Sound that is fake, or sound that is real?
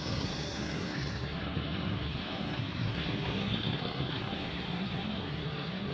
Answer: fake